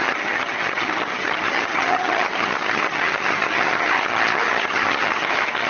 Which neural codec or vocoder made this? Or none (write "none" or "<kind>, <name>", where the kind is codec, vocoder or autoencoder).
vocoder, HiFi-GAN